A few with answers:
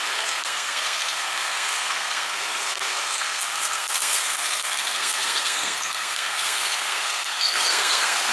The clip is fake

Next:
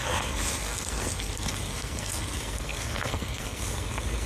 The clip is fake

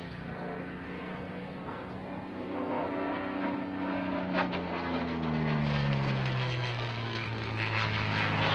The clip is fake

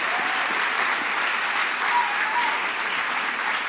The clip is real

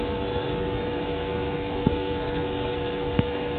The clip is fake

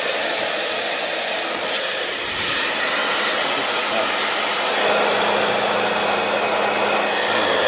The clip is real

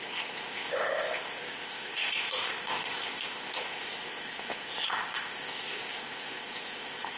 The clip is fake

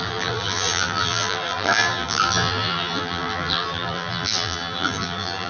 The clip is fake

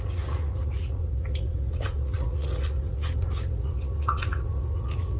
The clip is fake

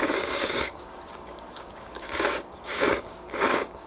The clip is fake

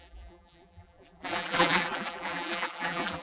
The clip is fake